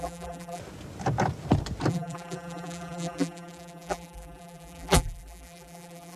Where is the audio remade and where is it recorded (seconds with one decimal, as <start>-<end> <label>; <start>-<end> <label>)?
0.0-0.6 remade; 0.6-1.9 recorded; 1.9-6.2 remade